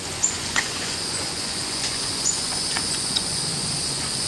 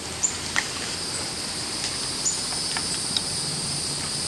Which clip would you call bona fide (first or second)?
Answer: second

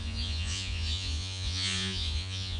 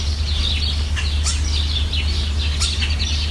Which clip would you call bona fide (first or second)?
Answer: second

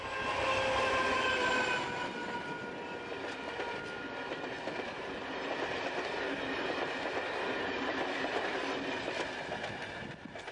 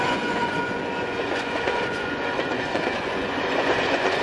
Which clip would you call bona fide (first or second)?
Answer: first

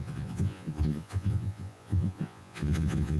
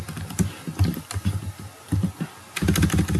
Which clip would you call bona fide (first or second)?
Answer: second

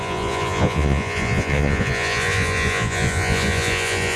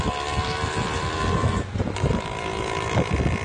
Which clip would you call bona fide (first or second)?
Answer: second